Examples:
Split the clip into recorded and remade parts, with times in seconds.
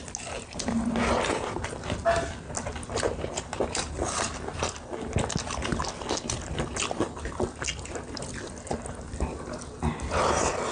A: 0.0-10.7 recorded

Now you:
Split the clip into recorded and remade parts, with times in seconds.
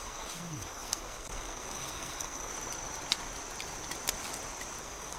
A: 0.0-2.5 remade; 2.5-4.8 recorded; 4.8-5.2 remade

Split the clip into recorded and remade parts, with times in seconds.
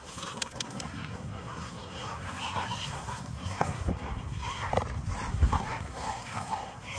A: 0.0-4.7 remade; 4.7-5.3 recorded; 5.3-7.0 remade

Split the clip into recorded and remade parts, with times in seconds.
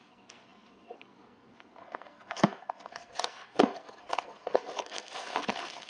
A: 0.0-5.9 remade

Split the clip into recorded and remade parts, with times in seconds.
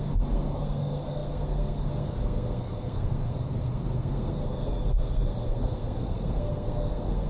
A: 0.0-7.3 remade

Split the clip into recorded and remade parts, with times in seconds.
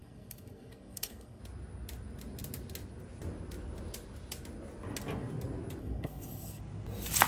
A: 0.0-1.4 remade; 1.4-5.8 recorded; 5.8-6.6 remade; 6.6-7.3 recorded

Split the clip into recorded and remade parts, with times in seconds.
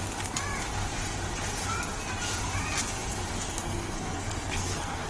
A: 0.0-3.3 recorded; 3.3-5.1 remade